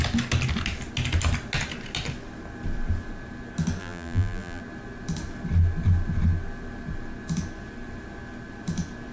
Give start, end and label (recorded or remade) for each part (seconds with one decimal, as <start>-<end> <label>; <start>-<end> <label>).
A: 0.0-3.8 recorded; 3.8-4.6 remade; 4.6-9.1 recorded